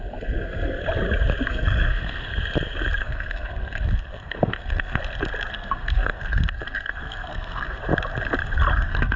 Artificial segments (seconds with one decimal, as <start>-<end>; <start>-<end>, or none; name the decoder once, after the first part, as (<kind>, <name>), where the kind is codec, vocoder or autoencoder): 0.0-0.8 (codec, SNAC); 1.5-2.3; 3.0-5.0; 5.5-7.8; 8.7-9.2

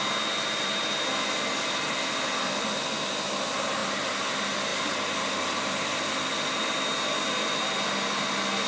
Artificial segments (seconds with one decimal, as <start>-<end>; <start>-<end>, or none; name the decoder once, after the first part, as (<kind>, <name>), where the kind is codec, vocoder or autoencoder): none